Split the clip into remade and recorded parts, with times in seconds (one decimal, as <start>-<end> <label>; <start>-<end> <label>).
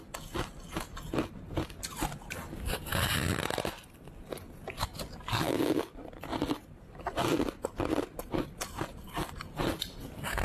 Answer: 0.0-10.4 recorded